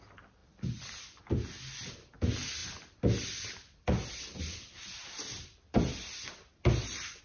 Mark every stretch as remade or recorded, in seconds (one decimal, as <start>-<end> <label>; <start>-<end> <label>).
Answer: 0.0-0.4 recorded; 0.4-1.2 remade; 1.2-2.6 recorded; 2.6-7.2 remade